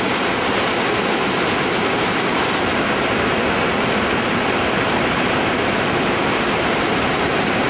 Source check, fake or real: real